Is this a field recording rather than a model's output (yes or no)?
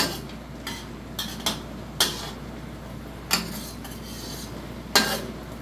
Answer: yes